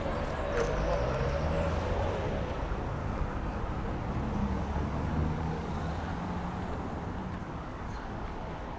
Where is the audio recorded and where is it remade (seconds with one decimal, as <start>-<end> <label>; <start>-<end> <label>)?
0.0-3.0 recorded; 3.0-3.6 remade; 3.6-4.4 recorded; 4.4-5.7 remade; 5.7-7.4 recorded; 7.4-8.8 remade